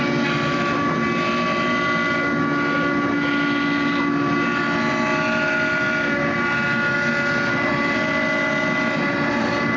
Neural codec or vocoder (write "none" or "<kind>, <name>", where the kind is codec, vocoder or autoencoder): none